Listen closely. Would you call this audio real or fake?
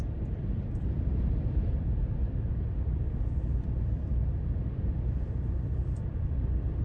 fake